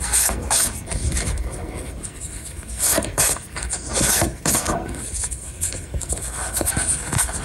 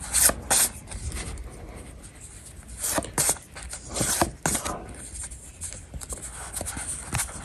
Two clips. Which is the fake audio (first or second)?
first